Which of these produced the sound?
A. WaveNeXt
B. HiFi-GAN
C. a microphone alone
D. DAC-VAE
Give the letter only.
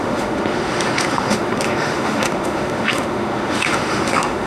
D